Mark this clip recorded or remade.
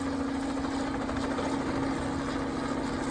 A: recorded